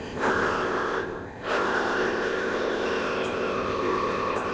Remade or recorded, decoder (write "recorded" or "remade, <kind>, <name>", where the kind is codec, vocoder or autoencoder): remade, codec, ZipCodec